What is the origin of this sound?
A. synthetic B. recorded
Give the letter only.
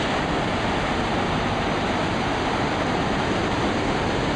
B